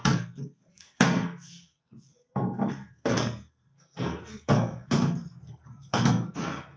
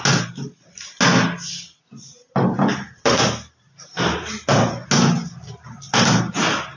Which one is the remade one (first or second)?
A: first